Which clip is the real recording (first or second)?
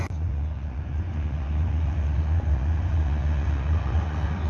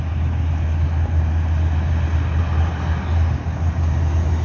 second